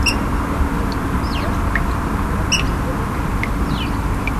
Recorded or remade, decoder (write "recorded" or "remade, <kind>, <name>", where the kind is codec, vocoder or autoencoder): recorded